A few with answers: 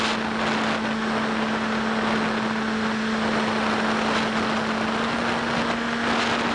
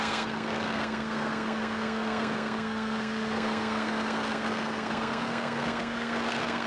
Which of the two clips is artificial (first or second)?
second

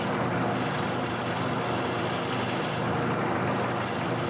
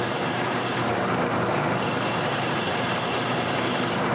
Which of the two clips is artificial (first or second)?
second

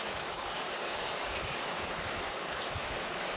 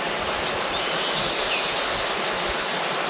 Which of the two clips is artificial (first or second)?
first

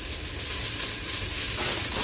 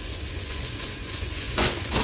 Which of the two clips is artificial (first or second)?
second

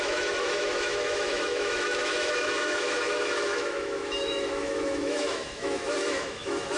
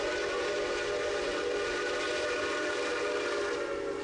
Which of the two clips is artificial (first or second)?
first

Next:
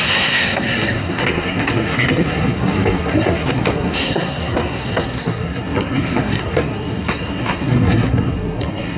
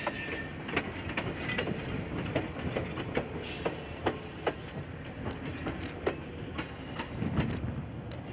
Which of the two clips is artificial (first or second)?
first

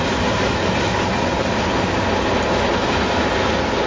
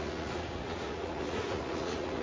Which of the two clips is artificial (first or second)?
second